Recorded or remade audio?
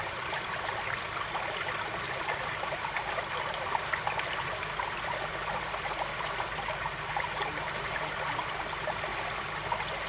recorded